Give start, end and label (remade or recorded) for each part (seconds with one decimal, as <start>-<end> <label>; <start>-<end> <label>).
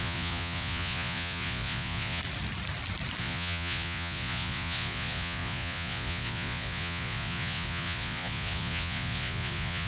0.0-2.2 remade; 2.2-3.2 recorded; 3.2-9.9 remade